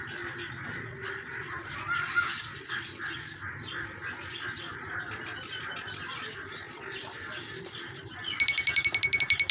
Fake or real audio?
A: real